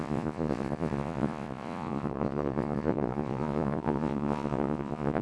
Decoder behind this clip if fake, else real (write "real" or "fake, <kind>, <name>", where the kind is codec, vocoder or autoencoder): fake, vocoder, Vocos